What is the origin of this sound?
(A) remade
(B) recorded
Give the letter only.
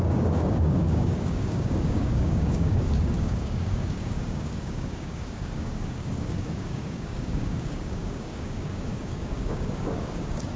A